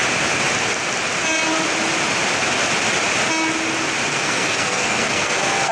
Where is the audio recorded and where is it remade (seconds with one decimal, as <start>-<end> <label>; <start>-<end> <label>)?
0.0-4.1 recorded; 4.1-5.7 remade